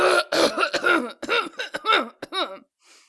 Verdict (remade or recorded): recorded